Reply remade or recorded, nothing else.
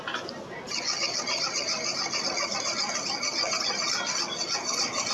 recorded